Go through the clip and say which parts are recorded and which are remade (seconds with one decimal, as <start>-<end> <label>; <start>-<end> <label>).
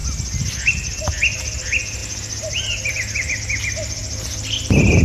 0.0-5.0 recorded